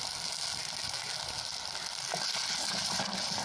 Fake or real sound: real